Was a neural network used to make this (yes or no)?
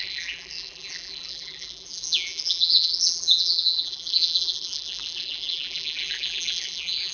yes